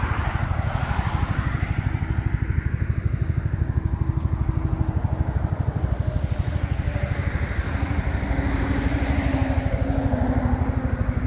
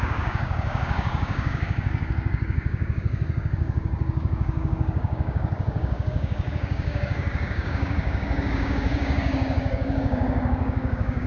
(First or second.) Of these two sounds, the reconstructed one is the second